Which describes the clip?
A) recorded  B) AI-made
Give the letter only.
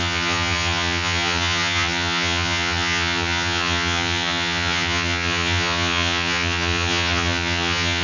B